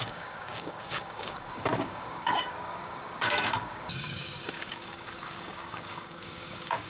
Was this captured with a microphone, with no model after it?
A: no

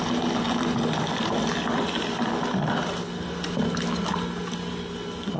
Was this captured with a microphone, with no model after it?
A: yes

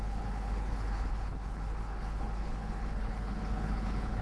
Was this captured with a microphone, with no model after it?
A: no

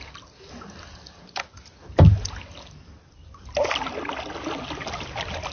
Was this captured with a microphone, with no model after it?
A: yes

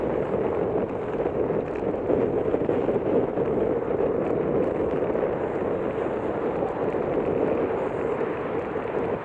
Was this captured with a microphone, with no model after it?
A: yes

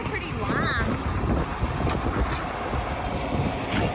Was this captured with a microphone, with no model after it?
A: yes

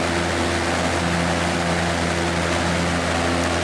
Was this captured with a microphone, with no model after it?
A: yes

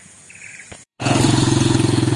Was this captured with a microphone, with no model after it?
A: no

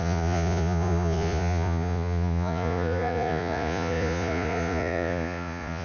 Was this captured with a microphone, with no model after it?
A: no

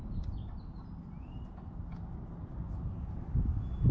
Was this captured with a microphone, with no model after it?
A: yes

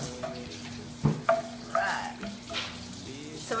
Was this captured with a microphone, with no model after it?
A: yes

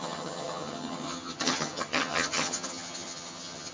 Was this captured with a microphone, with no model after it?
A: no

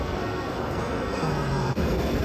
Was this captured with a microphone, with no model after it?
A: no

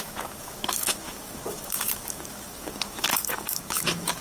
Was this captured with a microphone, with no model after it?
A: no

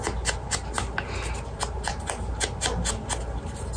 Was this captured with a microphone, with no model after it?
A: yes